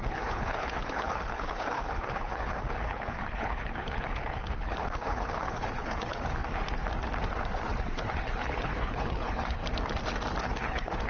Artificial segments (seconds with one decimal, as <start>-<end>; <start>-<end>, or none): 0.0-6.4; 7.8-9.6; 10.4-11.1